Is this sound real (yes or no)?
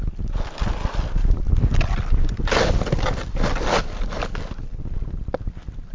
yes